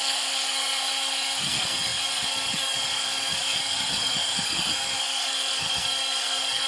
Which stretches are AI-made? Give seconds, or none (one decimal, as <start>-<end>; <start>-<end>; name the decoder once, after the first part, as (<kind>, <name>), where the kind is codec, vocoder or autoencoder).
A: 0.0-6.7 (codec, SNAC)